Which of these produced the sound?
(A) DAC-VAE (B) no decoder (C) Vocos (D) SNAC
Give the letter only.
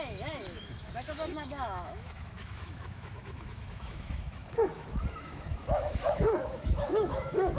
A